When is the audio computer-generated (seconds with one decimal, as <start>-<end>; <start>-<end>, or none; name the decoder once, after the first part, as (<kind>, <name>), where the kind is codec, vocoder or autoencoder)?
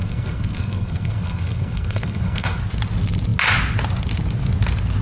0.0-2.6 (codec, SNAC)